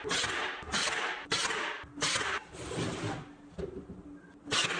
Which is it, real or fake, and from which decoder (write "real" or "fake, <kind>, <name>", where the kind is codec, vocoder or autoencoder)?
real